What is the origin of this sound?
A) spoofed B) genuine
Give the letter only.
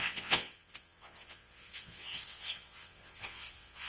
A